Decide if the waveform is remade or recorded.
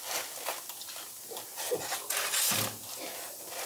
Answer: recorded